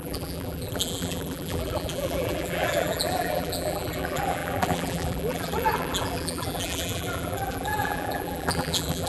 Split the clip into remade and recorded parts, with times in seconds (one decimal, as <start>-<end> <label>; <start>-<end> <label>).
0.0-9.1 remade